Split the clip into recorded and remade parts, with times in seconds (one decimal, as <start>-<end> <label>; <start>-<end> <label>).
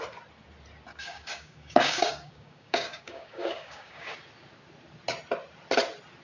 0.0-0.9 recorded; 0.9-4.1 remade; 4.1-6.2 recorded